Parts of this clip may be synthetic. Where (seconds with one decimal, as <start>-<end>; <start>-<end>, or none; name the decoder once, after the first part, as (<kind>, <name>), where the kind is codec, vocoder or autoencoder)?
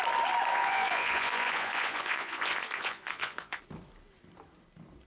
0.5-3.6 (vocoder, Vocos)